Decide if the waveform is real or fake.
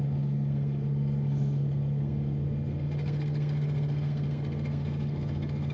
fake